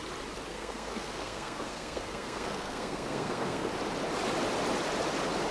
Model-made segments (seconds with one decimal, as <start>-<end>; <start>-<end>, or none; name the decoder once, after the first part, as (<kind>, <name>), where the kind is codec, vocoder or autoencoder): 0.5-3.7 (codec, SNAC)